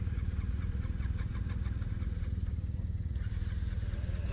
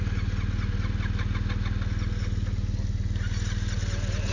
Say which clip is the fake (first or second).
first